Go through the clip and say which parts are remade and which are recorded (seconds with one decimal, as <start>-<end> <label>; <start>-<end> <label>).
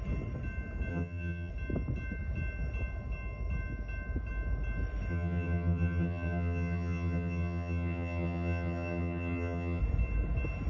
0.0-0.9 recorded; 0.9-1.5 remade; 1.5-5.1 recorded; 5.1-9.8 remade; 9.8-10.7 recorded